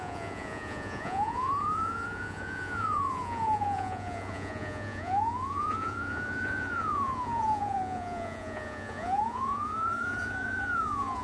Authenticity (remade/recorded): remade